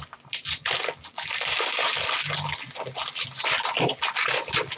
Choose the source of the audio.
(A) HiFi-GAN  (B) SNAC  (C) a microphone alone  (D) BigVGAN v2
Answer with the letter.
C